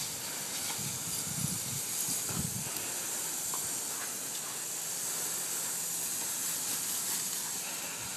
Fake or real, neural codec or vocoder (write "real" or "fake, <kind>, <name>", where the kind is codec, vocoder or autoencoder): real